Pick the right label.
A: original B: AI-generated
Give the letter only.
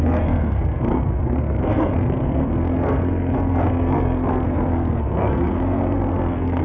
B